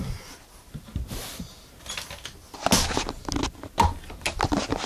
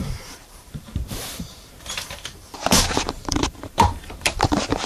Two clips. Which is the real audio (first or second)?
first